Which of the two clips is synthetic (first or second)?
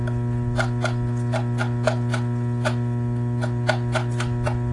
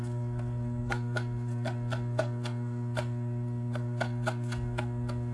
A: second